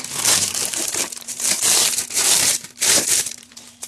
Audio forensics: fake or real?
fake